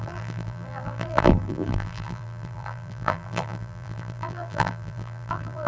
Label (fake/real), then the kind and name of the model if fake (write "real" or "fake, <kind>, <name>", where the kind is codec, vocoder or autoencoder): fake, vocoder, BigVGAN v2